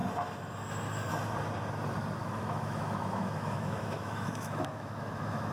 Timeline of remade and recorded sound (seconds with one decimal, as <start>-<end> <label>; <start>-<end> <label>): 0.0-2.2 recorded; 2.2-5.5 remade